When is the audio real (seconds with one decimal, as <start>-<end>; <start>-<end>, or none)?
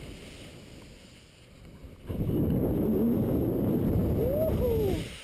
0.0-1.8; 3.6-5.2